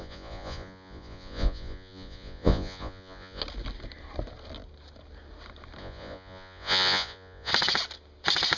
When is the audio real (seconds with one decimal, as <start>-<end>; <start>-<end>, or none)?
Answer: 3.4-5.8; 7.5-8.6